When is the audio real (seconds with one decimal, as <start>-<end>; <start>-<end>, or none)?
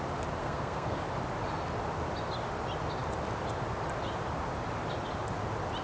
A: 0.0-0.4; 1.0-5.8